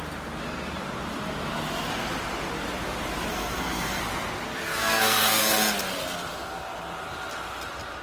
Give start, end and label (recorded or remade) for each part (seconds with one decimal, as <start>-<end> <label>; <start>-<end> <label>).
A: 0.0-3.3 recorded; 3.3-4.0 remade; 4.0-4.8 recorded; 4.8-5.4 remade; 5.4-8.0 recorded